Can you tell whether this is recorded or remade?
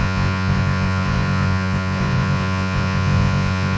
remade